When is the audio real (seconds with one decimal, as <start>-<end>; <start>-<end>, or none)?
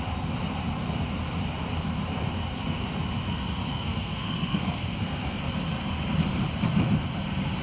0.0-3.7; 5.4-7.6